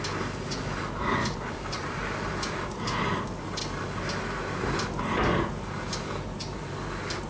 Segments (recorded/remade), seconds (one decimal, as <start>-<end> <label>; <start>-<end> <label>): 0.0-1.2 recorded; 1.2-2.7 remade; 2.7-7.3 recorded